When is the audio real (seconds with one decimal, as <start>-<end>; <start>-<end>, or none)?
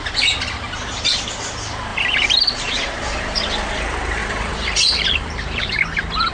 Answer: 0.0-1.9; 3.7-4.2; 5.8-6.3